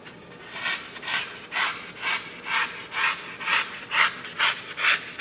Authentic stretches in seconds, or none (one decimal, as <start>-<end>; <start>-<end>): 0.0-5.2